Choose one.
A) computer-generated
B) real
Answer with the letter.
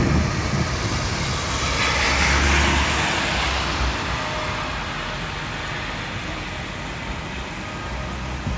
B